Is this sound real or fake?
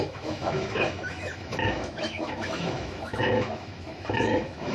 fake